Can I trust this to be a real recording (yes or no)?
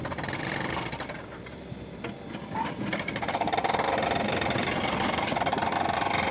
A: yes